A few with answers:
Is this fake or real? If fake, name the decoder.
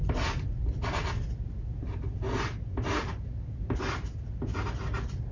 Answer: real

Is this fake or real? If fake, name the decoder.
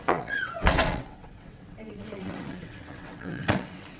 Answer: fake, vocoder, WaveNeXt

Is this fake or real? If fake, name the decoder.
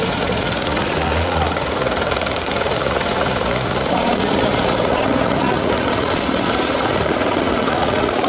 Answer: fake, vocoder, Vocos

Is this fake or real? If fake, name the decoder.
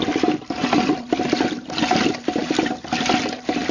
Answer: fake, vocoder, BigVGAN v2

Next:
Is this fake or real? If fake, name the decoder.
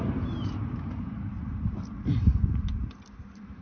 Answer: fake, vocoder, BigVGAN v2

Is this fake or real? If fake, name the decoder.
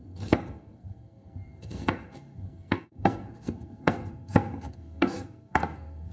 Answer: fake, codec, SNAC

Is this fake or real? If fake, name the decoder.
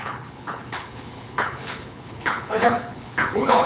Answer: fake, codec, HILCodec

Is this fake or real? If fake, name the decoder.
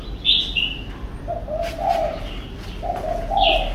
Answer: real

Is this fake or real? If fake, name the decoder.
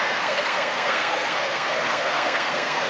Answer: fake, codec, SNAC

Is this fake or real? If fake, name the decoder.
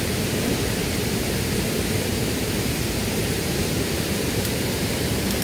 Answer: fake, vocoder, BigVGAN v2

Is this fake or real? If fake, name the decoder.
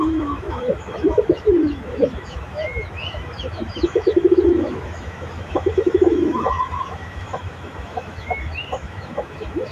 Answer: fake, autoencoder, DAC-VAE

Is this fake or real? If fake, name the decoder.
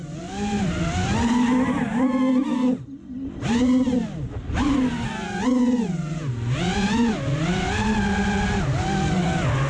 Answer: real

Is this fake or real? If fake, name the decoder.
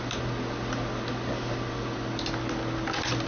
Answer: real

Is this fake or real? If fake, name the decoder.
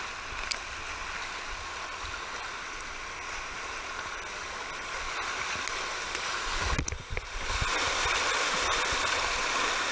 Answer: real